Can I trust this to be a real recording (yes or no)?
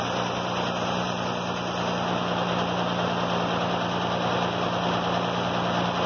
yes